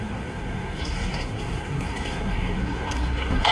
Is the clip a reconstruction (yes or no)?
yes